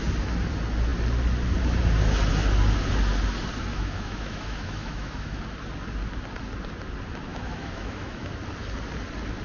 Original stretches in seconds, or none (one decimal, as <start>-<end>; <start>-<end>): 0.0-3.7; 5.4-7.3; 8.3-9.4